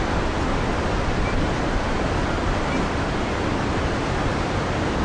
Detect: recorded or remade recorded